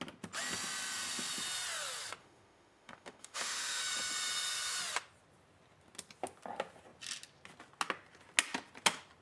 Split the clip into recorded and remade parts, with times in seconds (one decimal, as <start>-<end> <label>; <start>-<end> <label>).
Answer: 0.0-2.2 recorded; 2.2-3.8 remade; 3.8-9.2 recorded